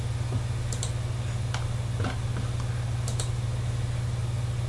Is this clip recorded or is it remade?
recorded